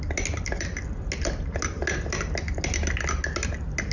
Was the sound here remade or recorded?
recorded